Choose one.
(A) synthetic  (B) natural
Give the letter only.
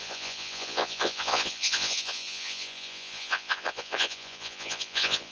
A